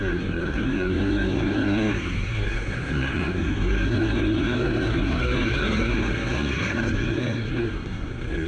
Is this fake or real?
fake